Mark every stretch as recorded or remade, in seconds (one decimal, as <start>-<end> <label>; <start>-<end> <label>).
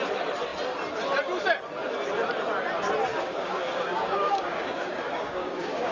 0.0-3.1 recorded; 3.1-5.9 remade